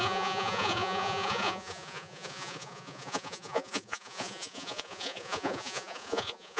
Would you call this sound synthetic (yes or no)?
yes